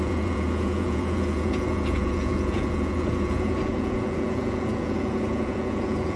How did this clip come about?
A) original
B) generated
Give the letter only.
B